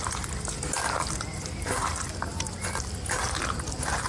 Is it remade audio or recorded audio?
recorded